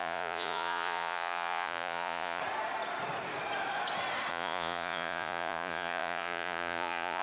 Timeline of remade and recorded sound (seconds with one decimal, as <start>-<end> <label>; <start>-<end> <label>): 0.0-2.4 remade; 2.4-4.3 recorded; 4.3-7.2 remade